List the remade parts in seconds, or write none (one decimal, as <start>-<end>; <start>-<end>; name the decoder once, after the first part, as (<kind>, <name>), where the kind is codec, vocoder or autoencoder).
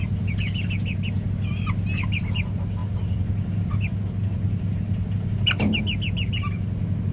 none